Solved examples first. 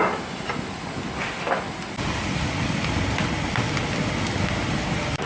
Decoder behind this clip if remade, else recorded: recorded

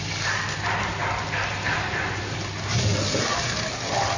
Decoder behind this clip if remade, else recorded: recorded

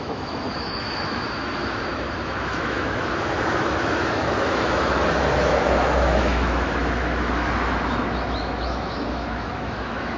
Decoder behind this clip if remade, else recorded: remade, autoencoder, DAC-VAE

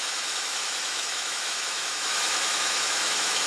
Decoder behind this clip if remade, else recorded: remade, autoencoder, DAC-VAE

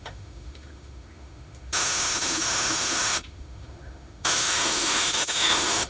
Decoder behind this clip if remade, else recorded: remade, autoencoder, DAC-VAE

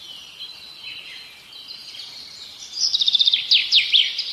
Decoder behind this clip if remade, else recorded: recorded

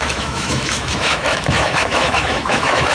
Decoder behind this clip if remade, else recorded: remade, autoencoder, DAC-VAE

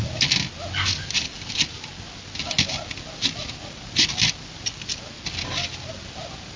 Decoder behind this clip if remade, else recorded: recorded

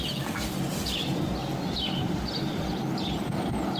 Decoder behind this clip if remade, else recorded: recorded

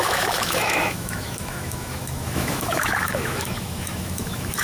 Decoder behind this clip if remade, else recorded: remade, autoencoder, DAC-VAE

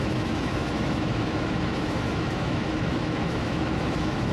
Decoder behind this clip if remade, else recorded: remade, autoencoder, DAC-VAE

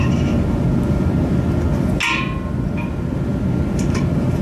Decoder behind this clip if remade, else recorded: recorded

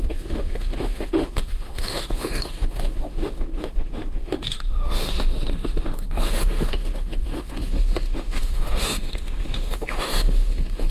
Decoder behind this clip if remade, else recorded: remade, autoencoder, DAC-VAE